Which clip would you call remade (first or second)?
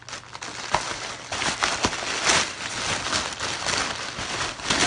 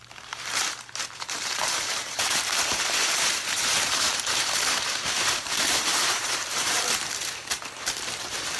second